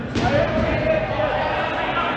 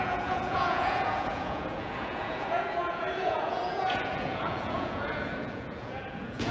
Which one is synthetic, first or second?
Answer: second